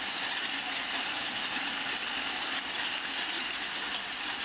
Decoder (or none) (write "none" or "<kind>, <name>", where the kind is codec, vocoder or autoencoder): none